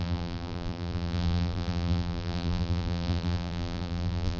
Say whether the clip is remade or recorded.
remade